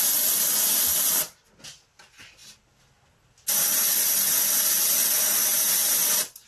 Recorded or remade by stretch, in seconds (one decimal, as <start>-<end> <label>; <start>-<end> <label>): 0.0-6.5 recorded